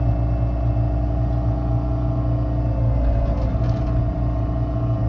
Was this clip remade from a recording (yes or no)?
no